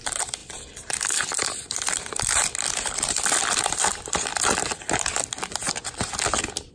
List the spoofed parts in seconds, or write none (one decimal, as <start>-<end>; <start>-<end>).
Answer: 0.0-4.3